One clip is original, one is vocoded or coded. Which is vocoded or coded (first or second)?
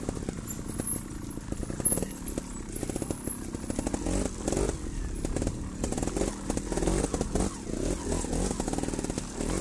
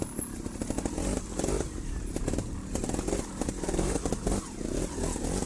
second